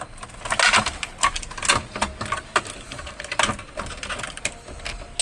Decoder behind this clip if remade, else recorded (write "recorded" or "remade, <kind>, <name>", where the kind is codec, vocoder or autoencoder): recorded